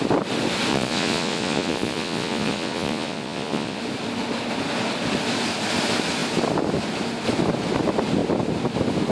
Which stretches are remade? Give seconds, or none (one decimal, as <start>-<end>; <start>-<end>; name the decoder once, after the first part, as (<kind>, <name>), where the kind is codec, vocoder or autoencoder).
0.7-3.8 (vocoder, Vocos)